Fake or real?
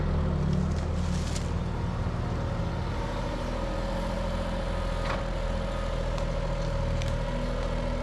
real